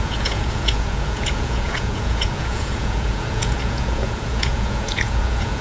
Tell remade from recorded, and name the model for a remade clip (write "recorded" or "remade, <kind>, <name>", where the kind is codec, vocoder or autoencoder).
remade, vocoder, Vocos